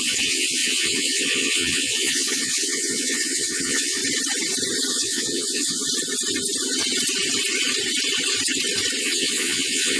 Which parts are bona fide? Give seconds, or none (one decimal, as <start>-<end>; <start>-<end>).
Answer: 4.0-4.9; 5.8-9.0